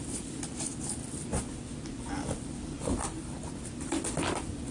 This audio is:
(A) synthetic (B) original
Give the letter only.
B